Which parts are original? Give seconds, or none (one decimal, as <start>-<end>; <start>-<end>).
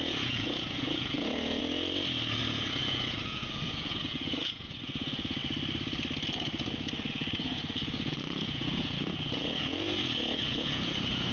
1.6-2.4; 5.4-7.1